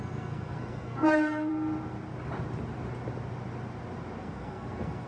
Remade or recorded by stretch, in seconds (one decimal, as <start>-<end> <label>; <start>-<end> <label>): 0.0-1.5 remade; 1.5-4.2 recorded; 4.2-5.1 remade